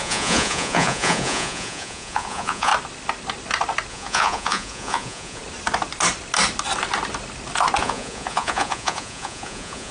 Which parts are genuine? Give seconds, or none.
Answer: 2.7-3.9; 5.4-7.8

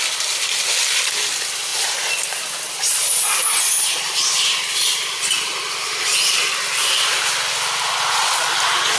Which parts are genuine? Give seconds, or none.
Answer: 0.0-9.0

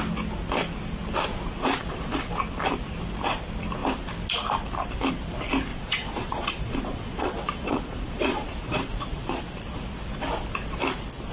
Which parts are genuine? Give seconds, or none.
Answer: 0.0-1.3; 2.1-5.7; 9.4-11.3

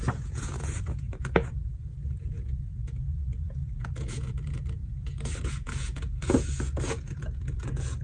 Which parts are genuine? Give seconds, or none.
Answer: none

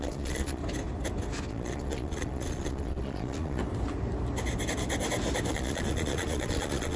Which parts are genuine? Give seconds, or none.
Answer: 0.6-1.5; 3.6-5.5

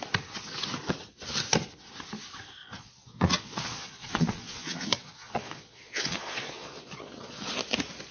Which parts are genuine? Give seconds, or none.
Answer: 0.0-2.6; 7.5-8.1

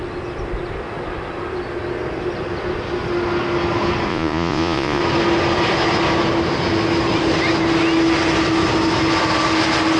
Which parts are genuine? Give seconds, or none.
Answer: 0.0-4.1; 5.0-10.0